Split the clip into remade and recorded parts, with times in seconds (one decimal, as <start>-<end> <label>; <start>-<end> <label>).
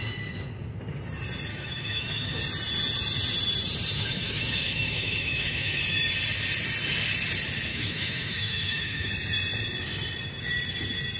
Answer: 0.0-1.5 recorded; 1.5-2.4 remade; 2.4-3.9 recorded; 3.9-5.8 remade; 5.8-7.7 recorded; 7.7-9.1 remade; 9.1-11.2 recorded